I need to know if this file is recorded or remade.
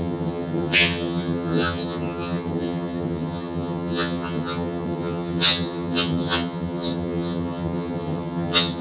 remade